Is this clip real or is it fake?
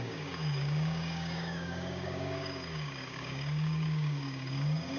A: fake